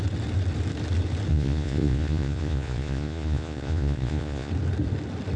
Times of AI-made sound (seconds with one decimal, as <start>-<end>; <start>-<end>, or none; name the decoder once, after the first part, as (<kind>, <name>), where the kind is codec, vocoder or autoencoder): 1.3-4.5 (vocoder, Vocos)